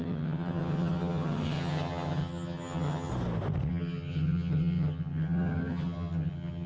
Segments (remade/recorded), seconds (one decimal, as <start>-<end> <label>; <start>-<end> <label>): 0.0-3.1 remade; 3.1-3.7 recorded; 3.7-6.7 remade